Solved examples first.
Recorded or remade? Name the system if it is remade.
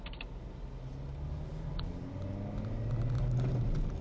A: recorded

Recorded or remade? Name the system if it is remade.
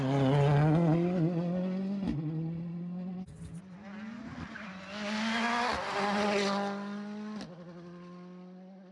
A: recorded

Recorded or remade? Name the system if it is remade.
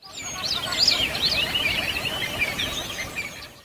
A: recorded